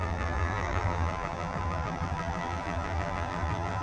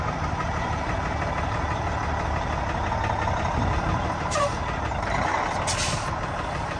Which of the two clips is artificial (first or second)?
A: first